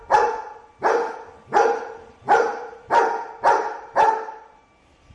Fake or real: real